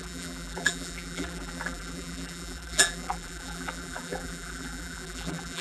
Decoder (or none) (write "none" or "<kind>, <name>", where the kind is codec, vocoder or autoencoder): vocoder, BigVGAN v2